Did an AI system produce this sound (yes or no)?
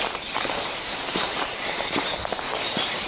yes